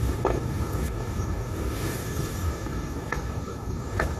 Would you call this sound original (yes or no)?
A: no